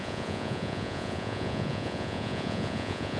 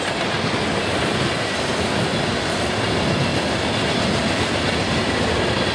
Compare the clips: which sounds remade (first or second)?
first